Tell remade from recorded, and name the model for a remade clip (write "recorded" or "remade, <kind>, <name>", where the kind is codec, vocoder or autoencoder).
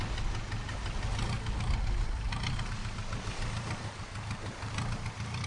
recorded